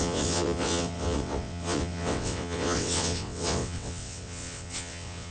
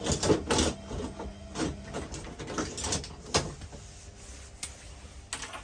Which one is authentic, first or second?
second